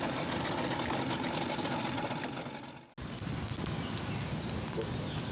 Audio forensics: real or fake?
real